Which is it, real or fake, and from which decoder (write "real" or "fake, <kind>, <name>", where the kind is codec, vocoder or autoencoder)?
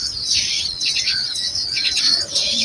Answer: fake, vocoder, WaveNeXt